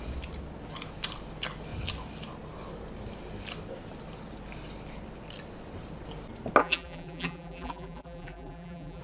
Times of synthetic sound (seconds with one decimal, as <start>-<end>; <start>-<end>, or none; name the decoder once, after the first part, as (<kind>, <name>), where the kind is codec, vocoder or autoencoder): 6.6-9.0 (vocoder, BigVGAN v2)